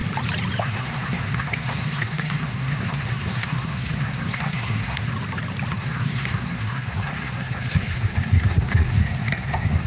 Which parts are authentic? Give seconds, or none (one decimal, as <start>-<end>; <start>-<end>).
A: 0.0-0.6; 5.1-5.7